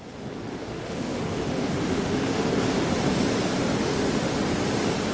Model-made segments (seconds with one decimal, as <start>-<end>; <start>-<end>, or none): 0.7-2.4; 3.8-4.4